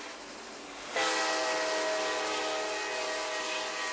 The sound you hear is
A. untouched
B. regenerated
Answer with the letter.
A